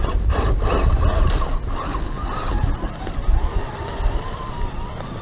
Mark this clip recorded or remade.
recorded